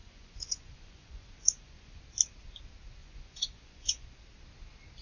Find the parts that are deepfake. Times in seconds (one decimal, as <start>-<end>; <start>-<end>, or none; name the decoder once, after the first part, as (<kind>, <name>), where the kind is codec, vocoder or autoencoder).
0.0-2.0 (vocoder, Vocos); 3.0-4.1